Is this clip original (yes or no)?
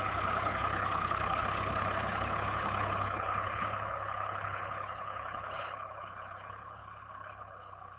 no